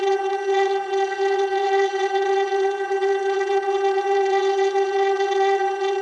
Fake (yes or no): yes